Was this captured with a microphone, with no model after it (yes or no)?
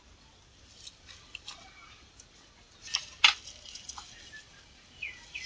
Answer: yes